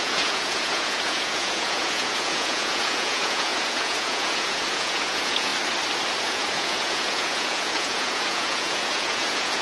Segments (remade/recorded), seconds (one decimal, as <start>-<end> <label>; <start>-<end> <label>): 0.0-5.5 remade; 5.5-6.2 recorded; 6.2-9.6 remade